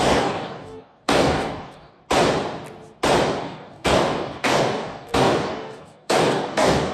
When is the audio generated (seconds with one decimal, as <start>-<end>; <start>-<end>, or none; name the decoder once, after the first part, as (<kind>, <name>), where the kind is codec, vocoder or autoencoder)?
0.0-2.0 (codec, DAC); 3.4-6.9